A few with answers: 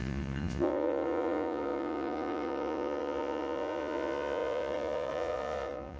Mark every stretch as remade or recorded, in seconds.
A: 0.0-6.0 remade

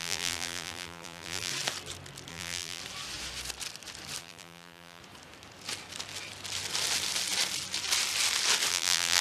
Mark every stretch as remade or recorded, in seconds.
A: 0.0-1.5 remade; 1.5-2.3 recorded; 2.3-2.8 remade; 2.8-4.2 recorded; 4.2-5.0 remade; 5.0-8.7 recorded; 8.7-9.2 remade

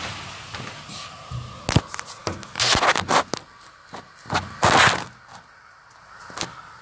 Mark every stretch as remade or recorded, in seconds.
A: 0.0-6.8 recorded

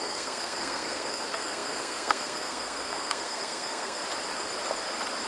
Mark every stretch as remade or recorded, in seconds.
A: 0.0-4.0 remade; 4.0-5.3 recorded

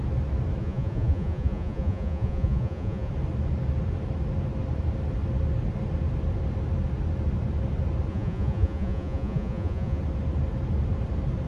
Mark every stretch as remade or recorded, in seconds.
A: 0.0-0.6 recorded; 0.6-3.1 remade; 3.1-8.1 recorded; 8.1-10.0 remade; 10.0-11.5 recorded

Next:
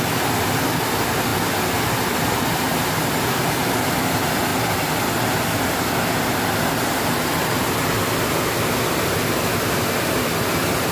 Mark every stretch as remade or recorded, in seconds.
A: 0.0-10.9 recorded

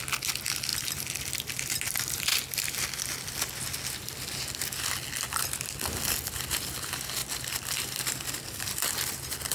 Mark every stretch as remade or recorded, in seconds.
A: 0.0-0.7 recorded; 0.7-1.5 remade; 1.5-7.2 recorded; 7.2-8.2 remade; 8.2-9.5 recorded